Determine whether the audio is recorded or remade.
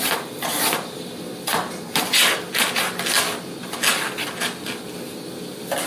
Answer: recorded